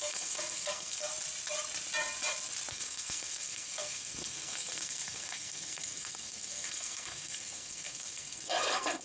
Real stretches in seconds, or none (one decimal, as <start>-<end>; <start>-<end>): 1.1-2.7